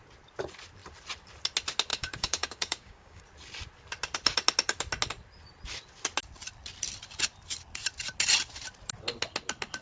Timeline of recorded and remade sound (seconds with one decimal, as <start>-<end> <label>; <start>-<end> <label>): 0.0-1.9 recorded; 1.9-3.2 remade; 3.2-9.8 recorded